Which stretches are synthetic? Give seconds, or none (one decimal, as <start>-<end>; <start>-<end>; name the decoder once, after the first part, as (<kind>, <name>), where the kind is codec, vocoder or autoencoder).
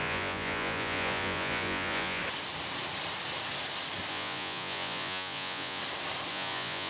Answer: 0.0-2.2 (vocoder, Vocos); 4.1-5.8; 6.3-6.9